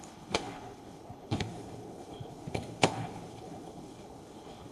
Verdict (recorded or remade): remade